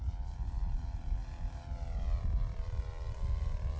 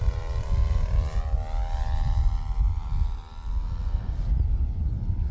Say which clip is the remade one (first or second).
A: first